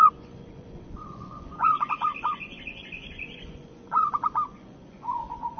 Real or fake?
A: fake